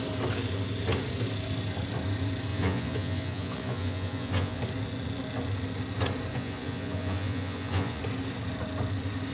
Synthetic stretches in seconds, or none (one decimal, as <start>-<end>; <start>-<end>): 2.5-4.6; 6.3-8.0

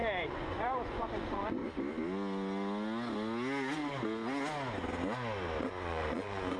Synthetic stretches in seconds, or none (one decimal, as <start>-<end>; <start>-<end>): 0.0-1.6; 5.6-6.6

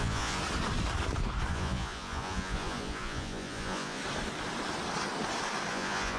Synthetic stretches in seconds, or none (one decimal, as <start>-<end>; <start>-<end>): 0.0-0.4; 1.5-4.0; 5.7-6.2

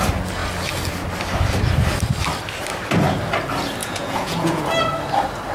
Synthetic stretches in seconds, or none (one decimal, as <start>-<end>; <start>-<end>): 3.8-4.6

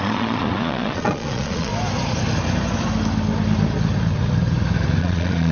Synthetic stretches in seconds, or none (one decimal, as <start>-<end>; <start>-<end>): 0.0-1.7; 5.0-5.5

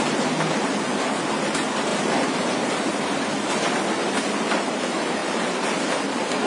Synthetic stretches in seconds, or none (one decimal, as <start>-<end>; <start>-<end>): none